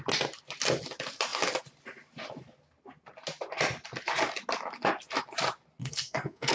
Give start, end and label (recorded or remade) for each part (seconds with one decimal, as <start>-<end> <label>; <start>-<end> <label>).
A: 0.0-5.8 recorded; 5.8-6.5 remade